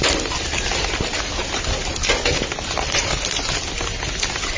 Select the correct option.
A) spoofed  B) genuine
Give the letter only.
B